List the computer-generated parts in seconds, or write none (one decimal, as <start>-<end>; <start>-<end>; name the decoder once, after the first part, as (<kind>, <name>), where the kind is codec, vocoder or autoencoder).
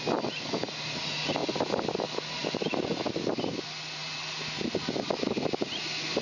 1.4-2.0 (vocoder, BigVGAN v2); 2.4-3.3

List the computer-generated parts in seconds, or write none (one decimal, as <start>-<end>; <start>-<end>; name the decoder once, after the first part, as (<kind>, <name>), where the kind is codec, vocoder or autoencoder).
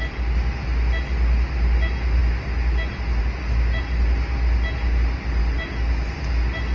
none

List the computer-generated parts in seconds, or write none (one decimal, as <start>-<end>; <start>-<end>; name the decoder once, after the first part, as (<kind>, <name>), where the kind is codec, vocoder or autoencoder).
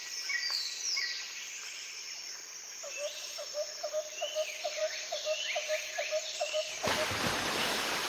2.5-3.9 (vocoder, BigVGAN v2); 4.8-8.1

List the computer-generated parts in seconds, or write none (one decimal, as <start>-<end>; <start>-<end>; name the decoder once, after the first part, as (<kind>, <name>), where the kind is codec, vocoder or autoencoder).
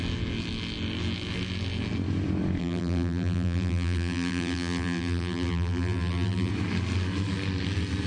2.6-6.5 (vocoder, BigVGAN v2)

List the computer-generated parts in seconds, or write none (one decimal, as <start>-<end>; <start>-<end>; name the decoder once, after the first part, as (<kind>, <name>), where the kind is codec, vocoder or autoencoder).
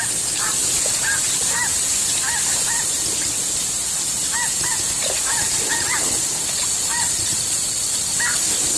none